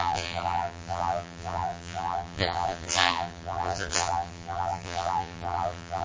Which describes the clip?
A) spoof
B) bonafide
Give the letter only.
A